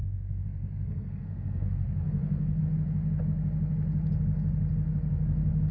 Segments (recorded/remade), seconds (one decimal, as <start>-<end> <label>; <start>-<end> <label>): 0.0-2.6 remade; 2.6-5.7 recorded